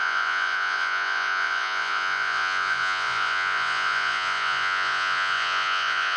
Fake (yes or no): yes